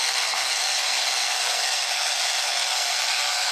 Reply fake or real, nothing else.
fake